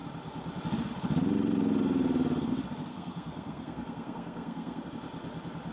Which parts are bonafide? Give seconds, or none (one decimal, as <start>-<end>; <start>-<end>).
0.0-2.9; 4.9-5.7